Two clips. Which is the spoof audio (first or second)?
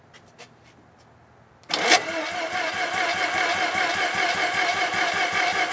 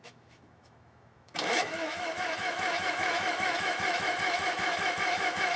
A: second